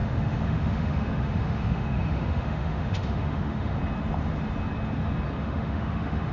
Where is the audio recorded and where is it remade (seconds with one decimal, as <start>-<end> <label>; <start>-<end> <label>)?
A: 0.0-3.8 remade; 3.8-5.4 recorded; 5.4-6.3 remade

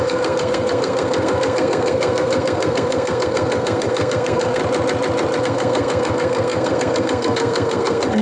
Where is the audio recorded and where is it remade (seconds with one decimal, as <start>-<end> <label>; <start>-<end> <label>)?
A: 0.0-4.6 remade; 4.6-5.4 recorded; 5.4-8.2 remade

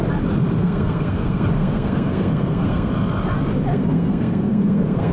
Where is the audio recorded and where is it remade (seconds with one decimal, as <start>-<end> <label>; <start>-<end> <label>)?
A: 0.0-0.6 recorded; 0.6-2.9 remade; 2.9-3.7 recorded; 3.7-5.1 remade

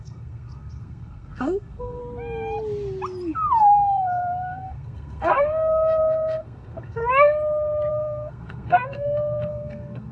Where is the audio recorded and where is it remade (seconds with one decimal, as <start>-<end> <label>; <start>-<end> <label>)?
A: 0.0-2.0 remade; 2.0-3.6 recorded; 3.6-7.0 remade; 7.0-7.9 recorded; 7.9-10.1 remade

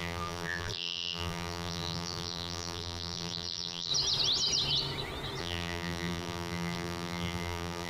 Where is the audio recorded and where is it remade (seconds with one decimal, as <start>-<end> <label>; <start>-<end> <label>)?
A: 0.0-3.9 remade; 3.9-5.4 recorded; 5.4-7.9 remade